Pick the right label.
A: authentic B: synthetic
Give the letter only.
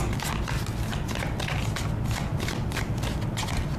A